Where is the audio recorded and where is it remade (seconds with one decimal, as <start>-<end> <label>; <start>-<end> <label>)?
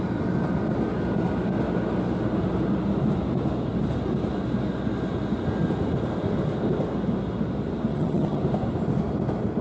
0.0-7.9 recorded; 7.9-8.4 remade; 8.4-9.6 recorded